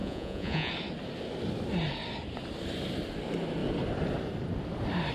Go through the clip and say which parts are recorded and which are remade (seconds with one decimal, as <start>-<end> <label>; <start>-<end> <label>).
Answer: 0.0-0.7 remade; 0.7-5.1 recorded